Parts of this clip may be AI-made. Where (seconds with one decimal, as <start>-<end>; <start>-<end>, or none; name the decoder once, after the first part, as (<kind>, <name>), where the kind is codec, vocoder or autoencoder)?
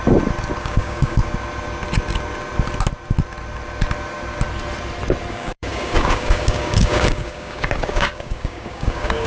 0.6-1.2 (codec, DAC); 5.3-9.3